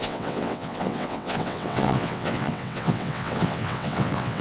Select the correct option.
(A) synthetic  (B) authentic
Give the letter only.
A